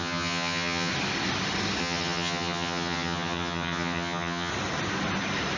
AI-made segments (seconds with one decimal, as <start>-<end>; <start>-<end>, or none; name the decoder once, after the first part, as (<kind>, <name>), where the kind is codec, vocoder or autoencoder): 0.0-0.9 (vocoder, HiFi-GAN); 1.8-4.5